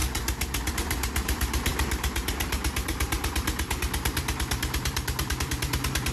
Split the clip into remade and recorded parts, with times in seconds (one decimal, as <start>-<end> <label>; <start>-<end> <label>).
0.0-6.1 remade